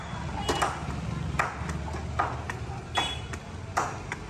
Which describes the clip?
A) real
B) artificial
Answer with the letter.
A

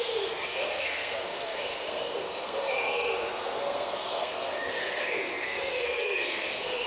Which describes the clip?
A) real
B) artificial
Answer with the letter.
B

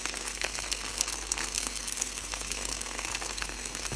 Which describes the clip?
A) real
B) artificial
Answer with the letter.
B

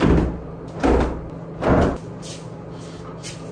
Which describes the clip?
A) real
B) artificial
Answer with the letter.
A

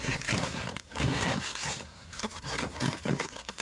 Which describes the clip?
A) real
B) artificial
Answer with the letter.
B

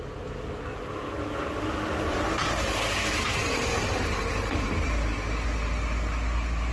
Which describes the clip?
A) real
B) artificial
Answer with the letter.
A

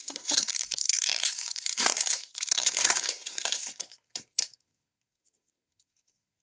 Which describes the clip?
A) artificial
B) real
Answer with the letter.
A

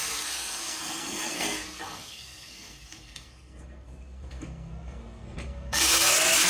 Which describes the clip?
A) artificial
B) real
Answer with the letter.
A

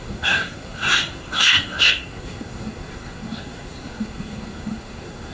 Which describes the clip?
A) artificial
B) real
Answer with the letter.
A